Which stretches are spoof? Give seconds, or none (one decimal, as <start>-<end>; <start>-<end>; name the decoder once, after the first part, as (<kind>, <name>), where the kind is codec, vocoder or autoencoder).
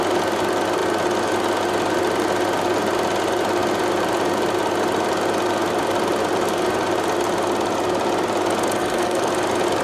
8.8-9.3 (codec, SNAC)